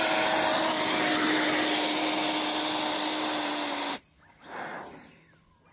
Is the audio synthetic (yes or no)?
no